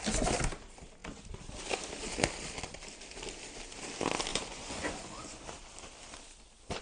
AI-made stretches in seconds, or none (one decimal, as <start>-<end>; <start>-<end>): 4.3-5.4